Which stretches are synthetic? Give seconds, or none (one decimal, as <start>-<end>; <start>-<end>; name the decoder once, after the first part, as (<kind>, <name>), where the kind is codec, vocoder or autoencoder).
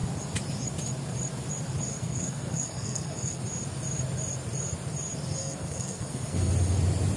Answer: 1.9-3.4 (codec, SNAC); 5.4-6.5